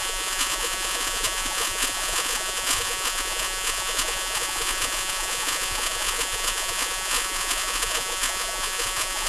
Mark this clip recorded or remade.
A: remade